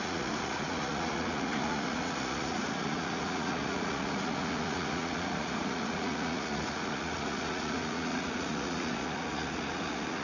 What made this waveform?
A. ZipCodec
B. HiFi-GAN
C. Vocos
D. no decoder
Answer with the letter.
C